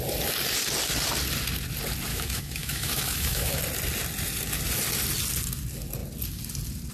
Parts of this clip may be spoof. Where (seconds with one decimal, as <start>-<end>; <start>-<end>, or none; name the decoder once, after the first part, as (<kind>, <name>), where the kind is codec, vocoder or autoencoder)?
2.1-3.6 (autoencoder, DAC-VAE)